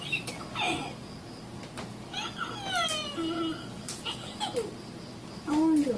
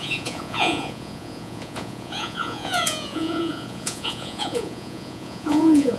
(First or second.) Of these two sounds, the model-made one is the second